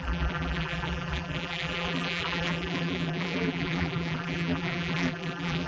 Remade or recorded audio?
remade